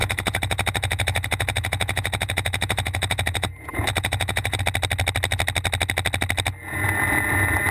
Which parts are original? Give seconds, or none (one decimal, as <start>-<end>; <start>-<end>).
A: 4.6-7.7